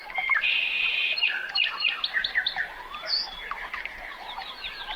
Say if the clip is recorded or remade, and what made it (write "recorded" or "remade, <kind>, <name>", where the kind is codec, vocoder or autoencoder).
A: recorded